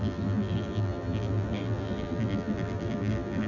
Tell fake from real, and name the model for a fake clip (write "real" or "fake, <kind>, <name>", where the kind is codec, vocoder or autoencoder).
fake, vocoder, BigVGAN v2